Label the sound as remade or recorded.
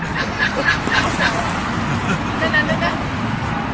recorded